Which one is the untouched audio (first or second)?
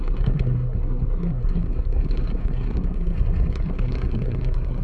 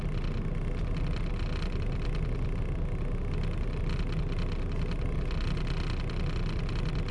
second